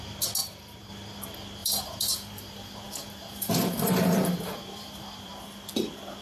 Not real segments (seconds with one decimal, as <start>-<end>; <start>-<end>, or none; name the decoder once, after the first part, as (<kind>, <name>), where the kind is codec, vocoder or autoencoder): 0.4-0.9 (vocoder, BigVGAN v2); 1.6-5.3